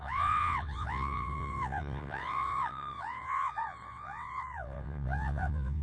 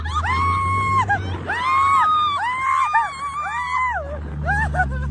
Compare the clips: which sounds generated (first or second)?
first